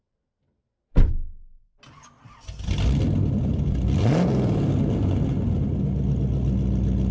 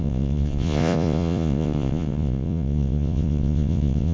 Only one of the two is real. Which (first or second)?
first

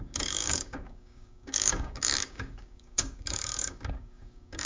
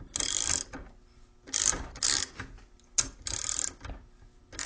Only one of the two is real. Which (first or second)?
second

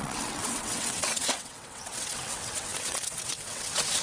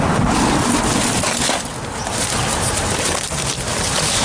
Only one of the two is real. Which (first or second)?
second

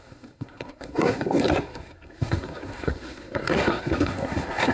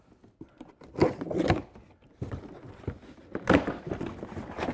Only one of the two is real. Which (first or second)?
second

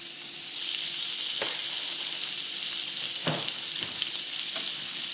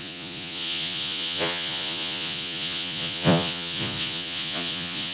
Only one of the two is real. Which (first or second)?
first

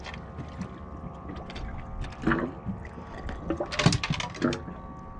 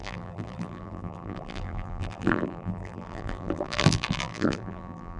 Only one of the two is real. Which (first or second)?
first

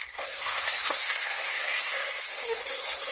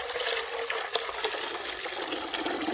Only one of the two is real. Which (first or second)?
second